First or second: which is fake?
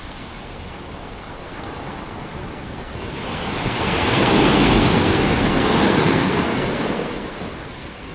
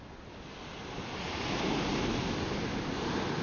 first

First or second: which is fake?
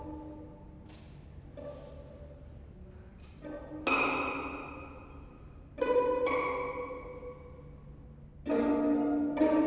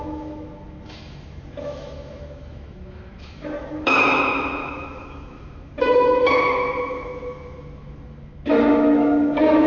second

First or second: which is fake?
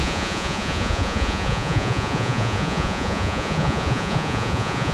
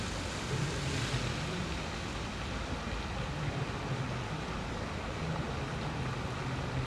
first